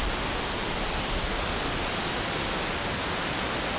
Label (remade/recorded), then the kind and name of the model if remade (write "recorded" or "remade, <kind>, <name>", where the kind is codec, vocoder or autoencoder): recorded